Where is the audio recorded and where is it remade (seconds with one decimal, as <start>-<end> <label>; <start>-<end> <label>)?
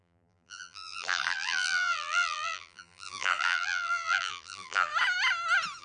0.0-4.9 remade; 4.9-5.8 recorded